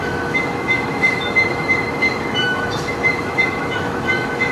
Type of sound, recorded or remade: remade